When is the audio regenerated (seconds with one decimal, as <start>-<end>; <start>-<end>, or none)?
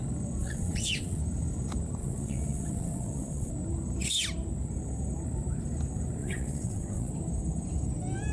0.4-1.2; 2.0-3.5; 6.2-7.1